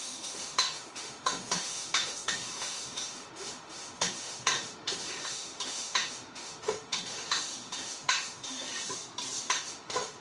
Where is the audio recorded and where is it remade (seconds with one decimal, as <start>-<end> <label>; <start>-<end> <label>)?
0.0-8.7 remade; 8.7-9.4 recorded; 9.4-10.2 remade